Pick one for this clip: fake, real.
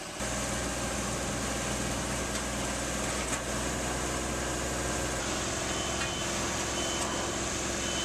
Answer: real